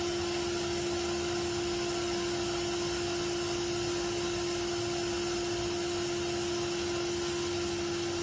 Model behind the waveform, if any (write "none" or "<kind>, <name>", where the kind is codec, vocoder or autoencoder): none